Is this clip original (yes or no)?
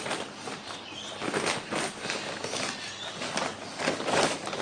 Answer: yes